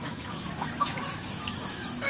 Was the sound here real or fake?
fake